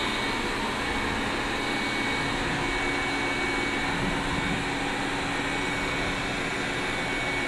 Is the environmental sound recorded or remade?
recorded